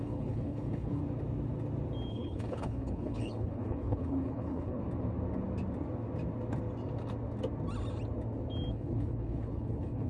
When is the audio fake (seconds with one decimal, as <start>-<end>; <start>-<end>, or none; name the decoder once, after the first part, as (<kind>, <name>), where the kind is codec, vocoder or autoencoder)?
0.0-1.0 (codec, HILCodec); 2.1-4.8; 8.7-10.1